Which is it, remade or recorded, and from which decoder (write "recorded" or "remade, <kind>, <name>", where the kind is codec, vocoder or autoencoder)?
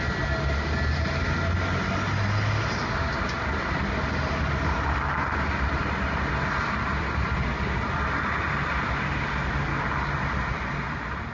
recorded